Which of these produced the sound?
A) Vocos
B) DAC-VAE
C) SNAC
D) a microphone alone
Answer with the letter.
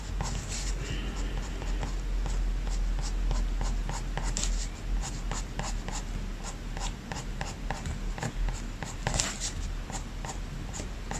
D